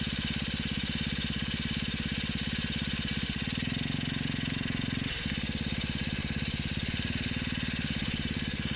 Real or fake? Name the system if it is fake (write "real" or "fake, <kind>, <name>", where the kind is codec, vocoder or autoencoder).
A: real